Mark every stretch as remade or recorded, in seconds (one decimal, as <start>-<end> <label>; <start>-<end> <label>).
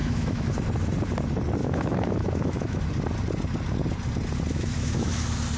0.0-0.5 remade; 0.5-1.6 recorded; 1.6-2.8 remade; 2.8-4.5 recorded; 4.5-5.1 remade; 5.1-5.6 recorded